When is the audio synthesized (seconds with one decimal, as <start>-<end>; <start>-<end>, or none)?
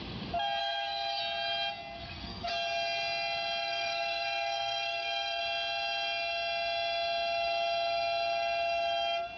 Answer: 0.6-1.2; 2.0-2.5; 3.6-5.4